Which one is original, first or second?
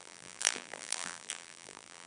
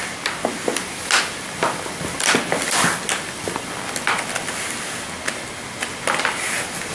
second